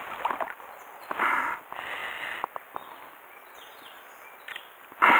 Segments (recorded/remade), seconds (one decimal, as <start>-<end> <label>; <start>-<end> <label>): 0.0-5.2 recorded